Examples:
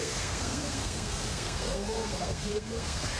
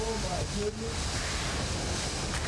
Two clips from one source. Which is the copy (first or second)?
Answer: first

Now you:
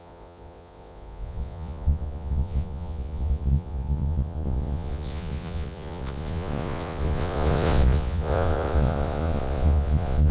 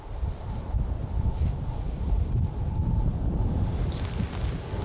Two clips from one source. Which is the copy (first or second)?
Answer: first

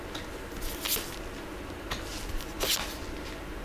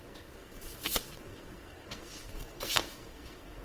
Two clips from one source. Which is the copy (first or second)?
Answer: second